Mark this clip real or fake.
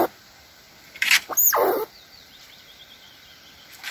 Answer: fake